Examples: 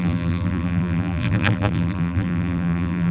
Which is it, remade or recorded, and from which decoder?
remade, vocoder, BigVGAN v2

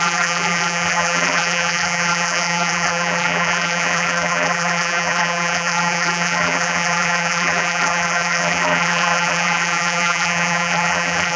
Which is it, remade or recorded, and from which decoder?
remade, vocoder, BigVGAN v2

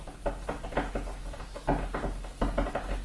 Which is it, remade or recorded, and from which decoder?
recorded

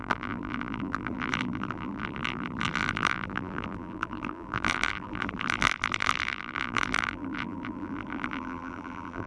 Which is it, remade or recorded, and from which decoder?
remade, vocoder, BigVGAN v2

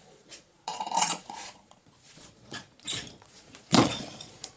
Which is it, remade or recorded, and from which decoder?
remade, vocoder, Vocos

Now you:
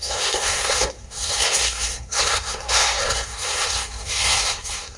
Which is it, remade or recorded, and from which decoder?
remade, codec, SNAC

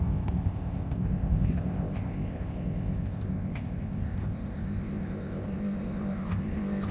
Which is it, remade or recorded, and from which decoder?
remade, codec, ZipCodec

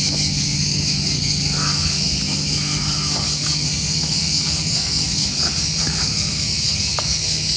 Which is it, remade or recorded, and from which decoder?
remade, codec, SNAC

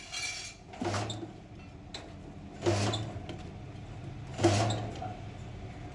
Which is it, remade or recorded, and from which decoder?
recorded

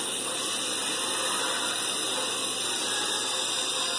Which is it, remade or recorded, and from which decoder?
recorded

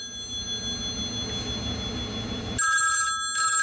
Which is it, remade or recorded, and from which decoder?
recorded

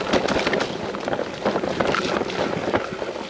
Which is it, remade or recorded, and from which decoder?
recorded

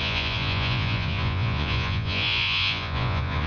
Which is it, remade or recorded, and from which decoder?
remade, vocoder, Vocos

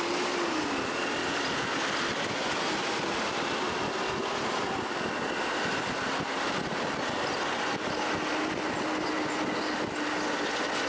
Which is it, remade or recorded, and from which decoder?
recorded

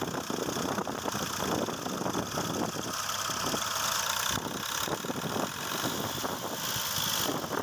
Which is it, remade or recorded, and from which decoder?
recorded